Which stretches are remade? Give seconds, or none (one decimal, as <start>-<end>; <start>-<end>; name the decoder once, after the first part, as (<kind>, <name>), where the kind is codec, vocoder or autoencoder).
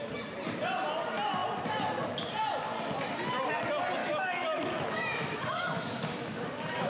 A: 4.0-6.0 (autoencoder, DAC-VAE)